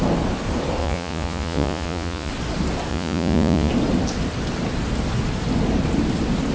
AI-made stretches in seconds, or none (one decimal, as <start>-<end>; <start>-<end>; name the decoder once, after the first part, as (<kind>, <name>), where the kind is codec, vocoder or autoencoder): 0.8-2.3 (vocoder, Vocos); 2.9-3.7